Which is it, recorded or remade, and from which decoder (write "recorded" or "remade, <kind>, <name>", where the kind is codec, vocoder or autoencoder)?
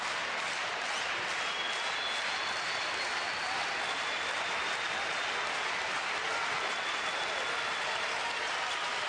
recorded